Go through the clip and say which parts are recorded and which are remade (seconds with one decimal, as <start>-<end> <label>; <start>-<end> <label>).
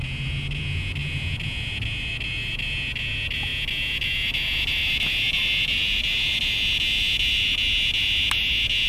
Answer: 0.0-8.9 recorded